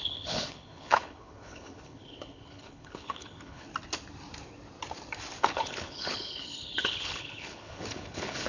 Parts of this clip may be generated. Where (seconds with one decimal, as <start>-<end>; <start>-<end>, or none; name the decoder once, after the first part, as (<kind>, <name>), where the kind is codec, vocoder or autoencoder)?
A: 0.0-3.7 (codec, HILCodec); 5.4-8.5